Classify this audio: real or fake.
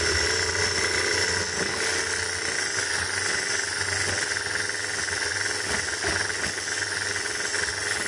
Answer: real